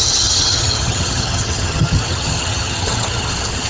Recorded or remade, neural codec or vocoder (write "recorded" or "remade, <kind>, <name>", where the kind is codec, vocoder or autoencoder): remade, vocoder, HiFi-GAN